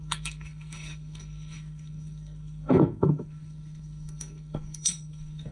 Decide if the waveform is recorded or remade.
remade